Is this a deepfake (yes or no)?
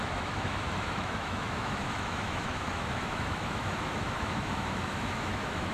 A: yes